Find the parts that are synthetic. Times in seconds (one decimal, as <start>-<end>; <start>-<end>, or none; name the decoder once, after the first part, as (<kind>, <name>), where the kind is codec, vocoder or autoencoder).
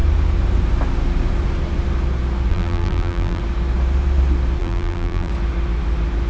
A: 2.5-3.4 (vocoder, BigVGAN v2); 4.6-5.3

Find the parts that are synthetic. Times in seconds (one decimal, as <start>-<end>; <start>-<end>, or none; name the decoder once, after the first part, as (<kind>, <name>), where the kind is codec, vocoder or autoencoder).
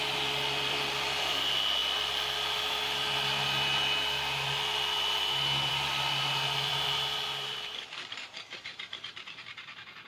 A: 0.7-1.3 (vocoder, BigVGAN v2); 6.7-9.4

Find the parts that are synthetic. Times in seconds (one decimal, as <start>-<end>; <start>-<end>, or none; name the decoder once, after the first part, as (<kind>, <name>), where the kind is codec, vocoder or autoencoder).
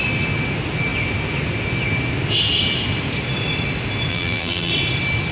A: 4.1-4.7 (vocoder, BigVGAN v2)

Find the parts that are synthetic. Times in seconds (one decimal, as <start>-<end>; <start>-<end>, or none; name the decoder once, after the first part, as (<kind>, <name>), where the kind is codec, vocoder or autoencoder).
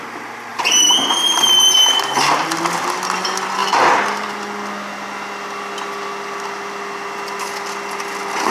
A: 0.5-1.4 (vocoder, BigVGAN v2); 3.6-4.3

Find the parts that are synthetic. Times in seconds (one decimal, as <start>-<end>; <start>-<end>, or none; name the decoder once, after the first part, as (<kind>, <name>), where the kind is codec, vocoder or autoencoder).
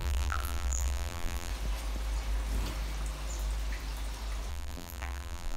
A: 0.0-1.5 (vocoder, BigVGAN v2); 4.5-5.6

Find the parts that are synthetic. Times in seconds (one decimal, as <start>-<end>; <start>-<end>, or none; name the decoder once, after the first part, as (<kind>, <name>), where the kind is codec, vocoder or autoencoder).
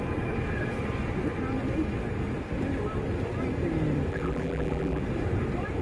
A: 4.1-5.0 (vocoder, BigVGAN v2)